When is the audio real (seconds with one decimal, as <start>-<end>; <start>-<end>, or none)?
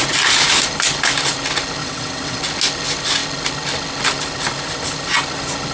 0.0-1.8; 2.4-5.7